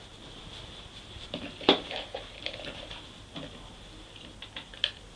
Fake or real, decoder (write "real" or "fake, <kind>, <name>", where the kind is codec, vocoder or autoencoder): real